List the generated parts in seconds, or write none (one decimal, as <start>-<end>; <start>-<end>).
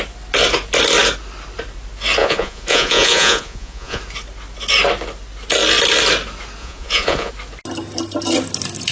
2.2-4.0; 6.6-7.3